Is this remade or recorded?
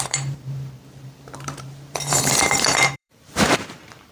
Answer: remade